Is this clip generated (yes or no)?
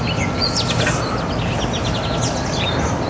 no